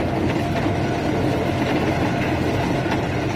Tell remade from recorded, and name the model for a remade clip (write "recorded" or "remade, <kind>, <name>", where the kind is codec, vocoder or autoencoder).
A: recorded